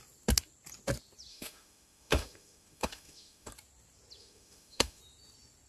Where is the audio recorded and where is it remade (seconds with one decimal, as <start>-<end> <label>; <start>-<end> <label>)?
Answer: 0.0-1.3 recorded; 1.3-3.5 remade; 3.5-4.2 recorded; 4.2-5.0 remade; 5.0-5.7 recorded